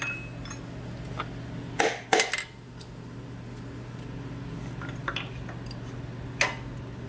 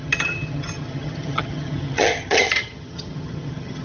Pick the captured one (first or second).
first